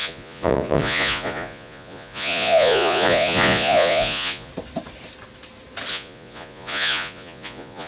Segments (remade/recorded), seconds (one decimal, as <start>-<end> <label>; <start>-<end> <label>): 0.0-4.5 remade; 4.5-5.9 recorded; 5.9-7.9 remade